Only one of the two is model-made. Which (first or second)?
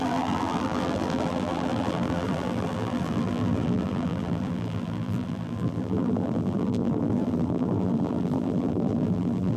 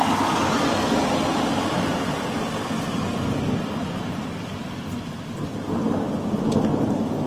first